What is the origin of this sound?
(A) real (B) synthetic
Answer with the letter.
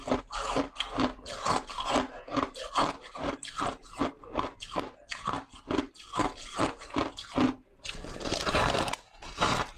A